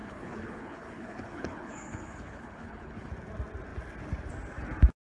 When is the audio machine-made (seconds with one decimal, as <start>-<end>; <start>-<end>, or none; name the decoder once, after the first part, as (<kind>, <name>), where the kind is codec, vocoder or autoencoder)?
0.0-3.1 (codec, HILCodec)